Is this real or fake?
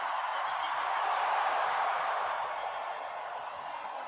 real